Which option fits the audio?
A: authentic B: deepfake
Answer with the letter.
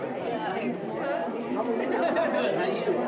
A